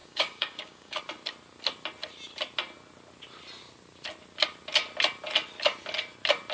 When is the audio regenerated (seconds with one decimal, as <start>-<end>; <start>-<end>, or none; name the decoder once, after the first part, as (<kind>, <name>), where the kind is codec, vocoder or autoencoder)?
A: 0.0-1.0 (codec, DAC)